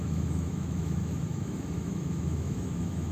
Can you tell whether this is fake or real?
fake